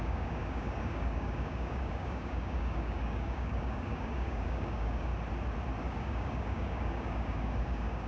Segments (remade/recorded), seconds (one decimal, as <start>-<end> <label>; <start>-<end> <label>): 0.0-5.1 remade; 5.1-5.8 recorded; 5.8-8.1 remade